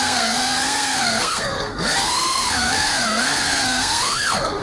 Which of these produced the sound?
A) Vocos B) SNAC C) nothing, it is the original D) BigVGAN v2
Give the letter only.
B